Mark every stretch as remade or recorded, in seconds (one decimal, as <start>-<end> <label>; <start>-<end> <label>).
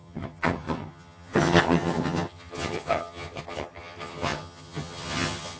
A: 0.0-5.6 remade